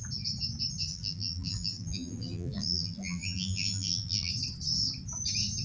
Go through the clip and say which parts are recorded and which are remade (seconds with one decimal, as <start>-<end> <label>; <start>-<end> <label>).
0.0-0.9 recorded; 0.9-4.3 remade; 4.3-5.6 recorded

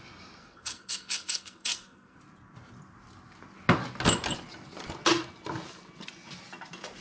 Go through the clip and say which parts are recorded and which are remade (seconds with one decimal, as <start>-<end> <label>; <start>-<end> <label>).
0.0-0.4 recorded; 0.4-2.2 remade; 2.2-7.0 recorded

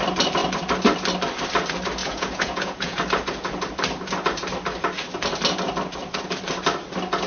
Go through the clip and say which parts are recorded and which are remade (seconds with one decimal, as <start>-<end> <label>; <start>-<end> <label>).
0.0-2.0 recorded; 2.0-3.0 remade; 3.0-7.3 recorded

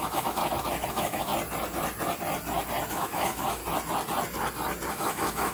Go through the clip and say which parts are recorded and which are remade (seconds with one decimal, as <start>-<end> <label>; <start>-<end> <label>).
0.0-0.4 remade; 0.4-0.9 recorded; 0.9-1.3 remade; 1.3-2.9 recorded; 2.9-3.6 remade; 3.6-4.9 recorded; 4.9-5.5 remade

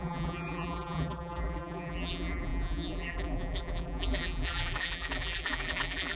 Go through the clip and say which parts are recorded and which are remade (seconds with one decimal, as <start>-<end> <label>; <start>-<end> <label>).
0.0-6.2 remade